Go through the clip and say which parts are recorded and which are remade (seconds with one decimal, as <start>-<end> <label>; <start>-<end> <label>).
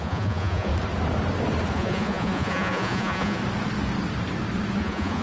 0.0-0.7 remade; 0.7-1.7 recorded; 1.7-3.4 remade; 3.4-4.8 recorded; 4.8-5.2 remade